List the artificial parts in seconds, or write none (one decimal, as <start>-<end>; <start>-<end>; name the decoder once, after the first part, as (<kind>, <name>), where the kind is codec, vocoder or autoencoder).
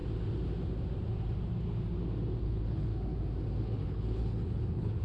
2.4-2.9 (codec, HILCodec); 3.6-5.0